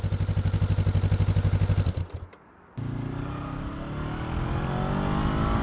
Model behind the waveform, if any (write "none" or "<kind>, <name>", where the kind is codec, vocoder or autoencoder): none